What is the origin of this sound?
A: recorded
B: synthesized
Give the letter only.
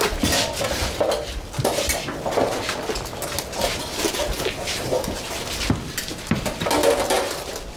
A